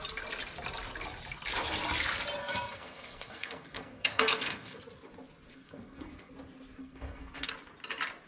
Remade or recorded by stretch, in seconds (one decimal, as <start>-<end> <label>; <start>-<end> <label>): 0.0-2.4 recorded; 2.4-4.8 remade; 4.8-5.5 recorded; 5.5-6.3 remade; 6.3-6.8 recorded; 6.8-7.5 remade; 7.5-8.3 recorded